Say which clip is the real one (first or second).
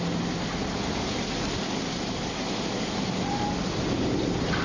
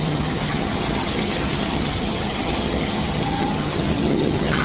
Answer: first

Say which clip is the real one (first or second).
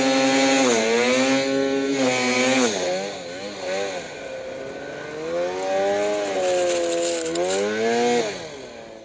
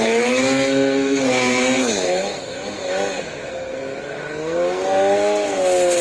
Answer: first